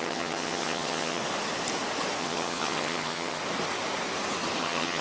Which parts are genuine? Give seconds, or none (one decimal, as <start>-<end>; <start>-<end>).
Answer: 1.2-2.2; 3.4-4.6